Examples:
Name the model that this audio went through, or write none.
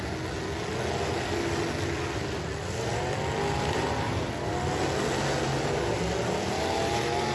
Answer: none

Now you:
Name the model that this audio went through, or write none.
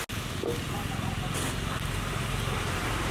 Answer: none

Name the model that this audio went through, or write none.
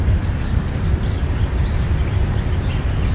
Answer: none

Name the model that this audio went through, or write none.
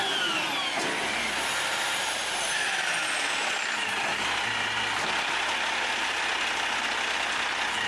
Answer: none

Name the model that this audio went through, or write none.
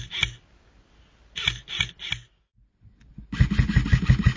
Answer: none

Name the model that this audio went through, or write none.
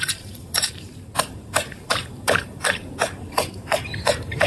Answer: vocoder, BigVGAN v2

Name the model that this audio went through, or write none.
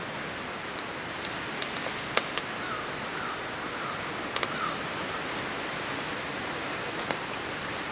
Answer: none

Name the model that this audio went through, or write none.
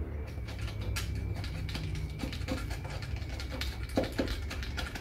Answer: none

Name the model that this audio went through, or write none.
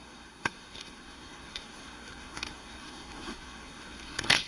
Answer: codec, SNAC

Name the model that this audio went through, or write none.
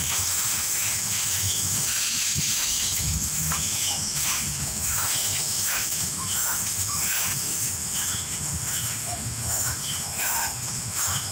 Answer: autoencoder, DAC-VAE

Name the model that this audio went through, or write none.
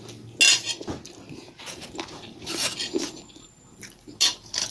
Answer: none